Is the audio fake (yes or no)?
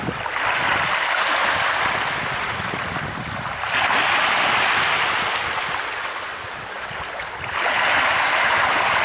no